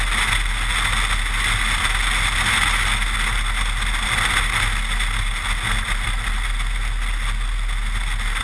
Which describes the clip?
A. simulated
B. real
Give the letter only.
B